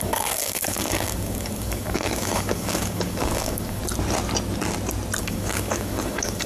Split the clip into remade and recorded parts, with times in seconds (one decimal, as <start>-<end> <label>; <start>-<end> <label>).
0.0-3.8 remade; 3.8-5.2 recorded; 5.2-6.5 remade